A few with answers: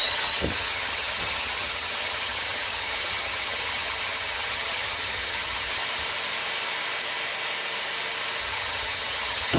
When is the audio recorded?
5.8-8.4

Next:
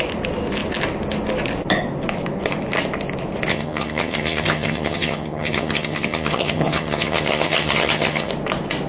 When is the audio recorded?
0.0-3.5; 8.3-8.9